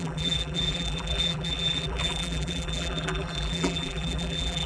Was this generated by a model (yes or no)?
yes